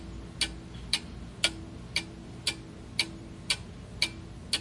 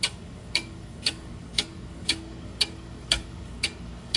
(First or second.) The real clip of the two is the first